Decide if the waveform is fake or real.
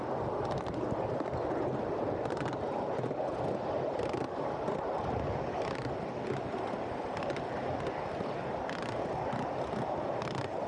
real